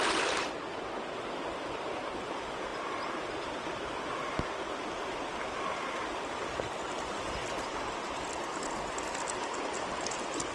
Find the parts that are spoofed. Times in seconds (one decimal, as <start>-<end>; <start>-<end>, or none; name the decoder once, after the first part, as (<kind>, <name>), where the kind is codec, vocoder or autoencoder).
none